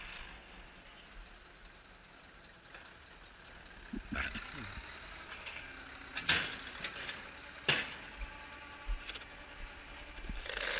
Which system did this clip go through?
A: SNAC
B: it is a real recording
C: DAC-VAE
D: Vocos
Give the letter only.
B